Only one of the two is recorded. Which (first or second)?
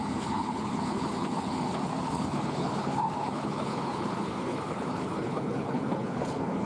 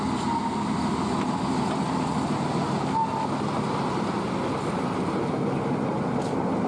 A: second